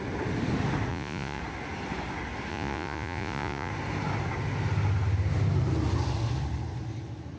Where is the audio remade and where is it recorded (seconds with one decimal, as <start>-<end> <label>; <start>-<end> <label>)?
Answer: 0.0-0.9 recorded; 0.9-1.4 remade; 1.4-2.5 recorded; 2.5-3.7 remade; 3.7-7.4 recorded